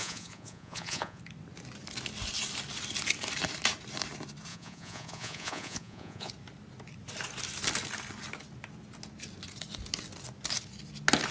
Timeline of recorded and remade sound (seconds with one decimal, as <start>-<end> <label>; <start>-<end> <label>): 0.0-1.2 remade; 1.2-4.5 recorded; 4.5-6.3 remade; 6.3-11.3 recorded